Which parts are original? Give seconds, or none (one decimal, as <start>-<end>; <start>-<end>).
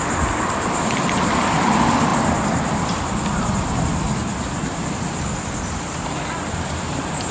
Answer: 0.0-7.3